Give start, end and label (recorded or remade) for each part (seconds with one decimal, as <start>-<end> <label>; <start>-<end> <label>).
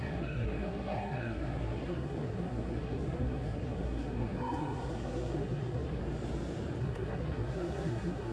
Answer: 0.0-6.0 remade; 6.0-6.8 recorded; 6.8-8.3 remade